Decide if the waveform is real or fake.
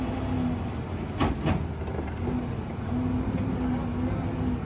real